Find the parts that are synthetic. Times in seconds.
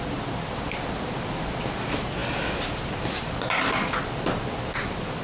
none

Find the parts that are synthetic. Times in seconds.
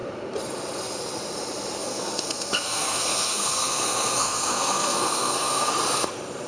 1.8-5.7